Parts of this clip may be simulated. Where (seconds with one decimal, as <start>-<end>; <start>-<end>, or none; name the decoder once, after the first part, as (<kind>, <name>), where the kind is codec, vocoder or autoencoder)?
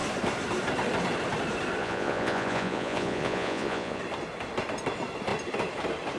1.8-4.0 (vocoder, Vocos)